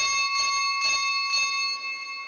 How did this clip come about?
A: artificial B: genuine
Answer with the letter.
B